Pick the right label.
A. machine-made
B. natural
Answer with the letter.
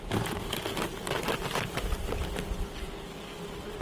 B